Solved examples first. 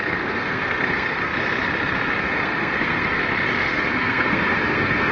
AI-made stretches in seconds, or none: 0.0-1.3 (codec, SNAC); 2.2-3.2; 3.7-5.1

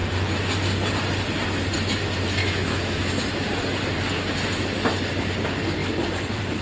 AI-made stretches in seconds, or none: 2.4-3.1 (autoencoder, DAC-VAE)

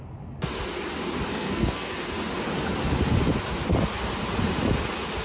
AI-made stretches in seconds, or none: 1.3-1.9 (codec, SNAC)

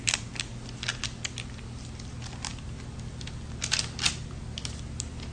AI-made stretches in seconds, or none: none